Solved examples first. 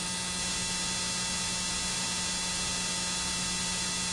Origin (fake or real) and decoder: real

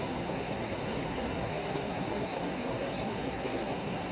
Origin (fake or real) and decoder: fake, codec, SNAC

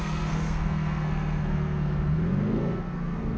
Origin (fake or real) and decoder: fake, codec, SNAC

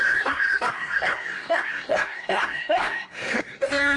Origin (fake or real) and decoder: fake, codec, SNAC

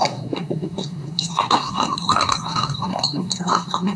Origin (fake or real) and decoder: fake, codec, SNAC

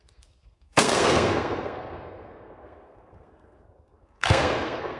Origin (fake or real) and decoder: fake, codec, SNAC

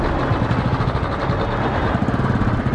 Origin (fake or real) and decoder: real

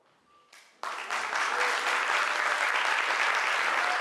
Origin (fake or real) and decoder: real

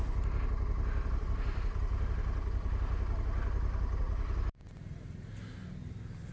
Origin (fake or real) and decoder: real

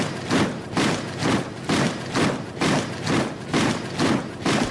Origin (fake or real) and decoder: real